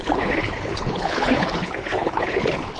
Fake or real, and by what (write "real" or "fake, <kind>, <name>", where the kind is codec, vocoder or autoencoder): fake, codec, HILCodec